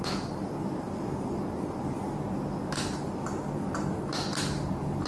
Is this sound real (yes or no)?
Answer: yes